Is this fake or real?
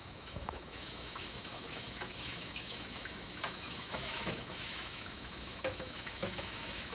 fake